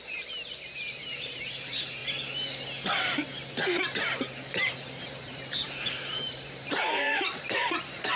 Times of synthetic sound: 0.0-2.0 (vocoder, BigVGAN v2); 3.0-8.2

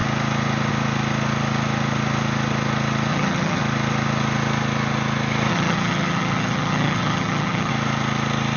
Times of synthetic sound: 3.1-3.6 (vocoder, HiFi-GAN); 5.5-7.7